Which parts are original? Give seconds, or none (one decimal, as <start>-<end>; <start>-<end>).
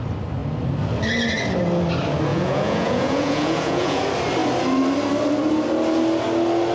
0.0-2.3; 4.0-6.7